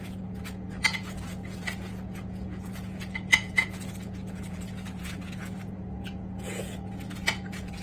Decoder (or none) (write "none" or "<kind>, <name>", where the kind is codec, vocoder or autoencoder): vocoder, Vocos